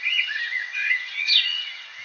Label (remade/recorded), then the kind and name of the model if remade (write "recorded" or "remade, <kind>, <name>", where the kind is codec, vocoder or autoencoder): remade, vocoder, WaveNeXt